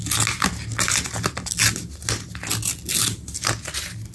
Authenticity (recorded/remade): recorded